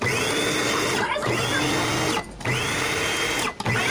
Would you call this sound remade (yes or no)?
no